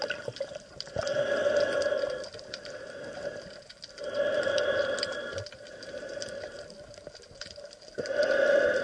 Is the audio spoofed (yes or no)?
no